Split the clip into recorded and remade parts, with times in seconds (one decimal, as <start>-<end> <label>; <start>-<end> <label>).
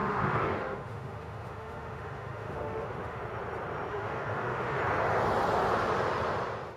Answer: 0.0-3.2 remade; 3.2-3.9 recorded; 3.9-4.8 remade; 4.8-6.8 recorded